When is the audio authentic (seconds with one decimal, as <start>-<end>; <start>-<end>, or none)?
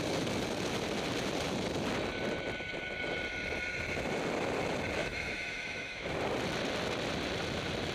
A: 0.0-5.0; 6.2-7.9